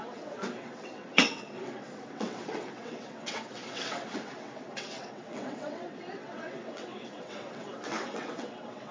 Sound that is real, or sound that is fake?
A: fake